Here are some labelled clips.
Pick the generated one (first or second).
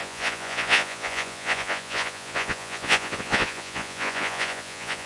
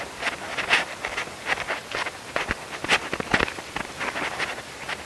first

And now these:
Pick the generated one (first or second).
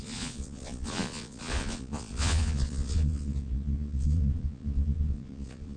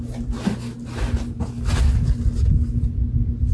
first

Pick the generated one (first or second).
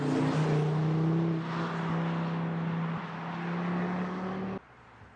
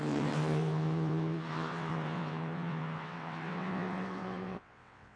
second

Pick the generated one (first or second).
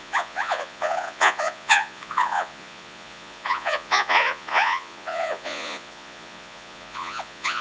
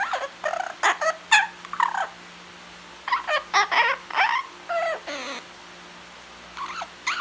first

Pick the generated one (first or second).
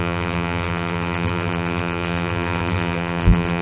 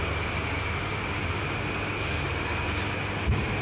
first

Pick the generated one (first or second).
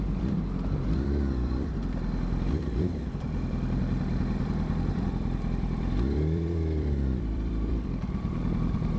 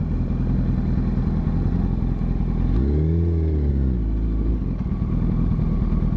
first